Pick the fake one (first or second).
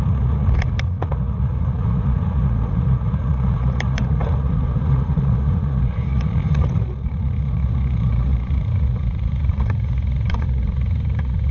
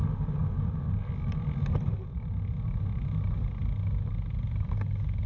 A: first